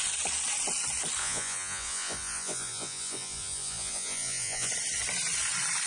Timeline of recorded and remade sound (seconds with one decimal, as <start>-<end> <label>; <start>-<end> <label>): 0.0-1.2 recorded; 1.2-4.7 remade; 4.7-5.9 recorded